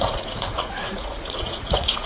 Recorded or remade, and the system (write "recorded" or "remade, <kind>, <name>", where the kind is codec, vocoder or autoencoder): remade, vocoder, Vocos